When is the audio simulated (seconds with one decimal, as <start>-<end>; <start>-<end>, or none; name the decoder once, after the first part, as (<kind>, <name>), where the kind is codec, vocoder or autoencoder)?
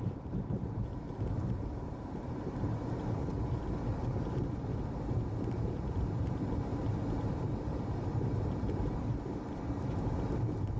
0.0-3.2 (vocoder, BigVGAN v2); 4.0-4.7; 5.4-10.8